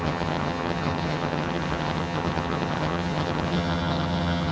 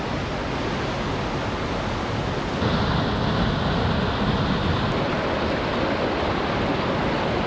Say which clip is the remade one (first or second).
first